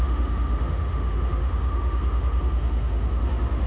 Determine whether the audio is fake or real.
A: fake